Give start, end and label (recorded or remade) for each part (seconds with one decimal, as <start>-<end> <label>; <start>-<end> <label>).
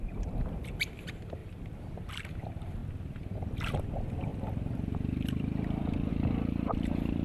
0.0-1.4 recorded; 1.4-2.1 remade; 2.1-7.2 recorded